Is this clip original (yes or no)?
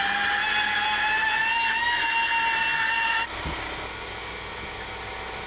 yes